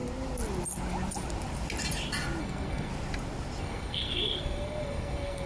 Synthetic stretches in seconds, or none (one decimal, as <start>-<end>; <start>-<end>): 2.4-2.9; 3.6-5.5